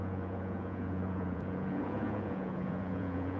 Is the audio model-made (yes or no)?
yes